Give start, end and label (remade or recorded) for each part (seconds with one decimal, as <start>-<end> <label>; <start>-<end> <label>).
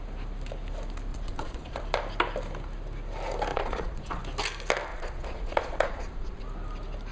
0.0-1.1 recorded; 1.1-1.8 remade; 1.8-3.5 recorded; 3.5-4.2 remade; 4.2-4.9 recorded; 4.9-6.4 remade; 6.4-7.1 recorded